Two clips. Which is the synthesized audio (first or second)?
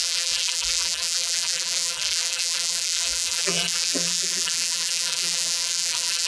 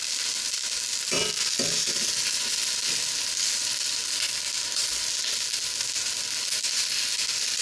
first